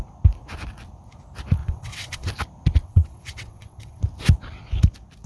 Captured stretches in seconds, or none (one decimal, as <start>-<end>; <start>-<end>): 0.0-1.6; 2.3-2.8; 4.0-5.3